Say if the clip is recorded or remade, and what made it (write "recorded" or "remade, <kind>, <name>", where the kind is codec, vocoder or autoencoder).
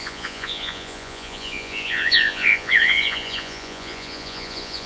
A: remade, vocoder, Vocos